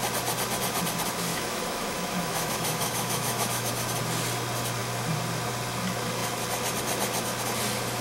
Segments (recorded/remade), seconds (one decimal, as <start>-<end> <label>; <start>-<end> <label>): 0.0-1.3 recorded; 1.3-3.7 remade; 3.7-8.0 recorded